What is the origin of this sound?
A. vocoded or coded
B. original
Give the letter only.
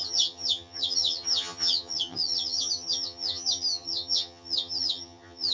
A